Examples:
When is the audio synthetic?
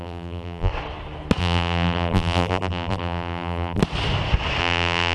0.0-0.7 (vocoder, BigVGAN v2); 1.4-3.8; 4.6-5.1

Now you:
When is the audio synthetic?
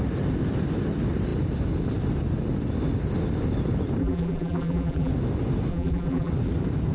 4.0-5.1 (vocoder, BigVGAN v2); 5.7-6.3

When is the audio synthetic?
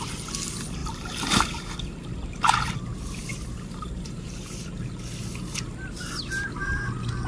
0.8-2.7 (vocoder, BigVGAN v2); 3.3-6.0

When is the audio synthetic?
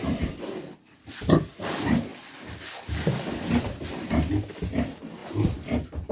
0.0-2.1 (vocoder, BigVGAN v2); 2.8-6.1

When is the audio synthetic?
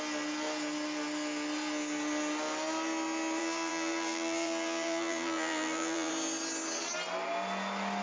3.4-6.1 (vocoder, BigVGAN v2)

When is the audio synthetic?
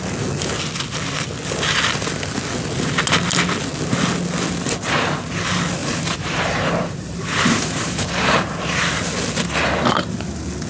5.8-8.8 (vocoder, BigVGAN v2)